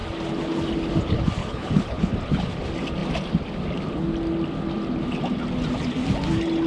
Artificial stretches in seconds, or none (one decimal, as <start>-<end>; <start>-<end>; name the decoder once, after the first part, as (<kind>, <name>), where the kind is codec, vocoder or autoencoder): 1.4-2.1 (codec, HILCodec)